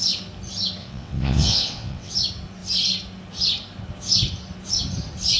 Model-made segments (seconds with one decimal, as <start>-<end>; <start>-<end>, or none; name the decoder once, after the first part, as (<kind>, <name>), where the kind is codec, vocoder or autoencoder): 0.8-2.1 (vocoder, WaveNeXt)